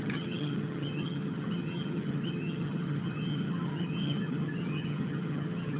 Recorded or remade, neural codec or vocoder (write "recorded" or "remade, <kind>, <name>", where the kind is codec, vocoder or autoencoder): remade, vocoder, HiFi-GAN